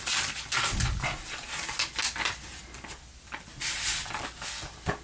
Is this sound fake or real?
real